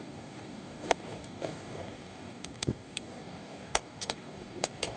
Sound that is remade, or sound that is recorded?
remade